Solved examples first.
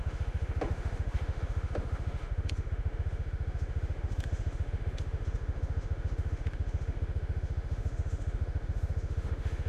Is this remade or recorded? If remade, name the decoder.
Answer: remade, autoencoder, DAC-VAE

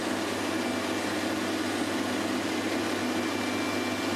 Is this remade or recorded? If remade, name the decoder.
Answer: recorded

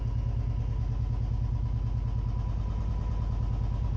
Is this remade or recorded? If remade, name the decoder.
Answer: recorded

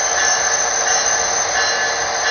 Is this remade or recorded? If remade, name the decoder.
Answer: recorded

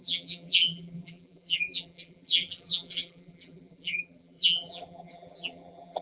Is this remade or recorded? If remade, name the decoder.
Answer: remade, vocoder, BigVGAN v2